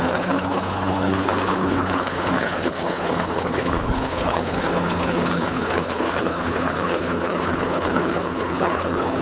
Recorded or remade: remade